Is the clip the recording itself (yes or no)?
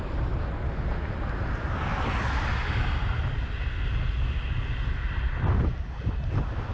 yes